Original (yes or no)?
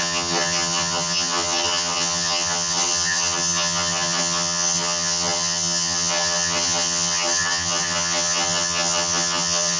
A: no